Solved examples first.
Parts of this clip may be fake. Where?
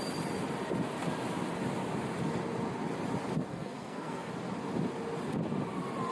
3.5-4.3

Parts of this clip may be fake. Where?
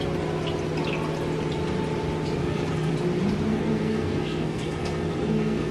2.4-2.9; 3.5-5.7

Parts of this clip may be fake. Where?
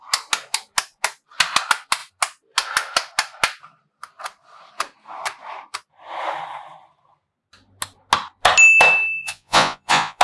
9.2-10.2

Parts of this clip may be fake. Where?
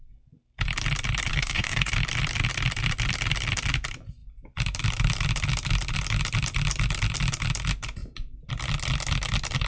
1.3-1.9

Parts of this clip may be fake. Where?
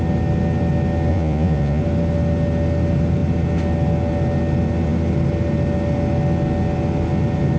1.1-1.8